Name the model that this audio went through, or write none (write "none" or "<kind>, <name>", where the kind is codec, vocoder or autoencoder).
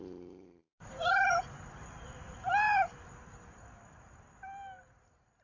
vocoder, BigVGAN v2